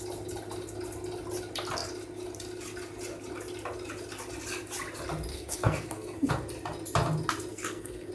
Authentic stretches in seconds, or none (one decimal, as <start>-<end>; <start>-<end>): 0.0-5.3; 6.3-7.5